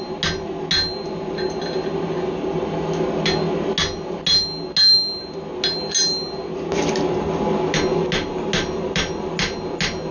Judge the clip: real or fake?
real